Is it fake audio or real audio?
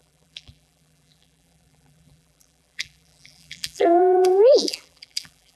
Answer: fake